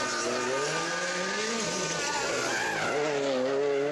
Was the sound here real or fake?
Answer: real